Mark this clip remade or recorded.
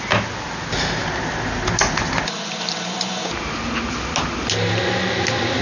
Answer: recorded